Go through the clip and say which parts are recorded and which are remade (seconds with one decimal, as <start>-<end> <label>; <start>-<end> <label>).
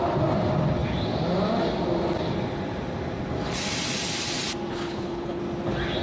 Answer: 0.0-4.7 recorded; 4.7-5.4 remade; 5.4-6.0 recorded